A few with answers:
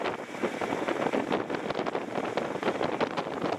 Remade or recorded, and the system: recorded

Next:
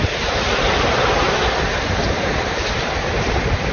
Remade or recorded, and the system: recorded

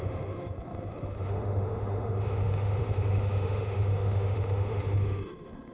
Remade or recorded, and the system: remade, autoencoder, DAC-VAE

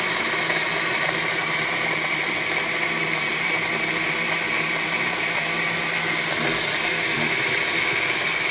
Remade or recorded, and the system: recorded